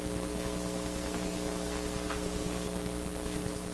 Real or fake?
fake